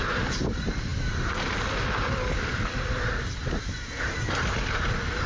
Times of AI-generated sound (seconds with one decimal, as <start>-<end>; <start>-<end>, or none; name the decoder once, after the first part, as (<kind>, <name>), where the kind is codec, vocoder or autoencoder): none